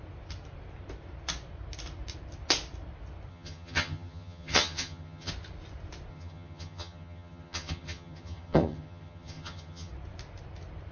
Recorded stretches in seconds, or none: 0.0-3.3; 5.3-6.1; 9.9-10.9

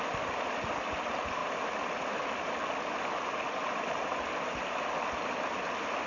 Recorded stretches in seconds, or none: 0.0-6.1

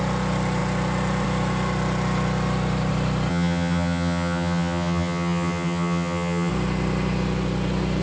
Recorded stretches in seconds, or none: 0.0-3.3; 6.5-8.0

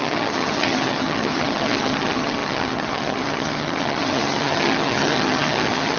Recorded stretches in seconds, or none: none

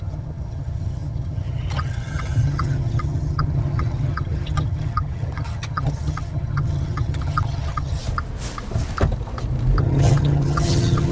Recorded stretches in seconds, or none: 8.0-9.8